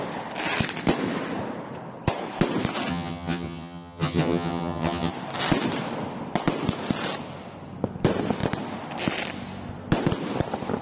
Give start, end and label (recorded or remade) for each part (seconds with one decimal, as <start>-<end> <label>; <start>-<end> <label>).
0.0-2.9 recorded; 2.9-5.1 remade; 5.1-10.8 recorded